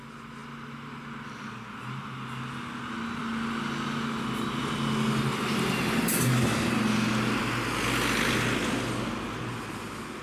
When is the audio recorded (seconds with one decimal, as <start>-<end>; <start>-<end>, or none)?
0.0-10.2